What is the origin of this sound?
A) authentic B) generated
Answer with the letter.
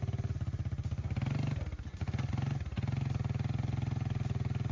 A